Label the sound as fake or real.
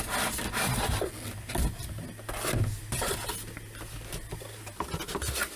real